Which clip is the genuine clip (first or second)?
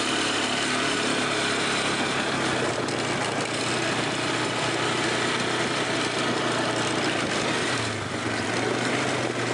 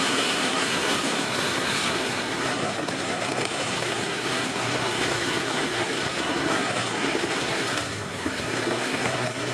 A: first